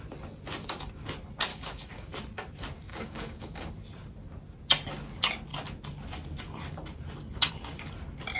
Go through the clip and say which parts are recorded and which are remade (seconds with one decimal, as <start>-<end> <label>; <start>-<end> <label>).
0.0-1.5 recorded; 1.5-2.1 remade; 2.1-2.9 recorded; 2.9-3.7 remade; 3.7-8.4 recorded